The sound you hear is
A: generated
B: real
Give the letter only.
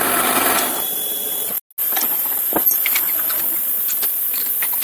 B